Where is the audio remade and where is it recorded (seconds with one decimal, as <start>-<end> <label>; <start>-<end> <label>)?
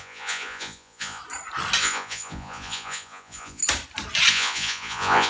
0.0-1.2 remade; 1.2-1.8 recorded; 1.8-3.6 remade; 3.6-4.3 recorded; 4.3-5.3 remade